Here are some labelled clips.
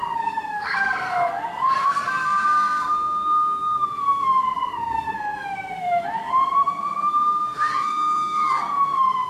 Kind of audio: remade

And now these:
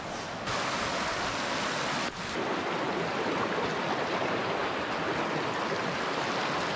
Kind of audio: recorded